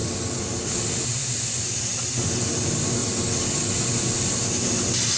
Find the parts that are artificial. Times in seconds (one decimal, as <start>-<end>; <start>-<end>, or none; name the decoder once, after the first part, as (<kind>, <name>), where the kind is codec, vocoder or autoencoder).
none